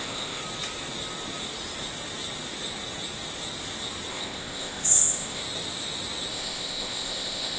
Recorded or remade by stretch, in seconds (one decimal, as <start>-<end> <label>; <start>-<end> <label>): 0.0-0.4 remade; 0.4-4.1 recorded; 4.1-5.4 remade; 5.4-6.3 recorded; 6.3-7.6 remade